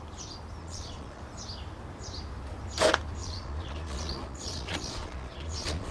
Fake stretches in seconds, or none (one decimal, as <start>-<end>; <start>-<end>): 0.6-1.2; 3.2-5.9